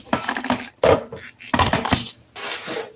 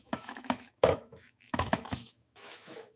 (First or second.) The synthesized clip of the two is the second